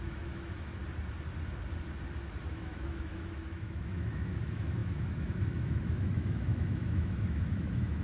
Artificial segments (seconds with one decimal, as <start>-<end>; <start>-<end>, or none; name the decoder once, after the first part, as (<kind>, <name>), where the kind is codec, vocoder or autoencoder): 0.0-0.8 (autoencoder, DAC-VAE); 2.5-8.0